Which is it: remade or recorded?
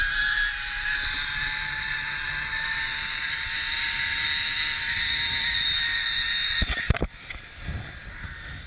recorded